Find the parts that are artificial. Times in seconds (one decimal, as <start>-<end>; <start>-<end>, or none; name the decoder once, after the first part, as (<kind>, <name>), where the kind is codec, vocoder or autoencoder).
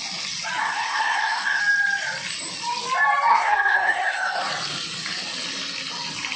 0.6-1.6 (codec, SNAC); 3.3-4.5